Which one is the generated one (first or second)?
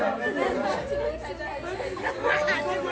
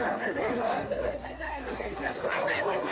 second